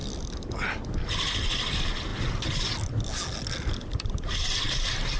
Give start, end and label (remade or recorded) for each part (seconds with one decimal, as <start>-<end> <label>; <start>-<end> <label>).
0.0-5.2 recorded